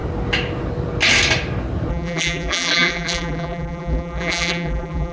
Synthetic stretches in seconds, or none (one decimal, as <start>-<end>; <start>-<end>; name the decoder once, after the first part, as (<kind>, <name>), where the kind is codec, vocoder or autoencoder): 1.9-5.1 (vocoder, BigVGAN v2)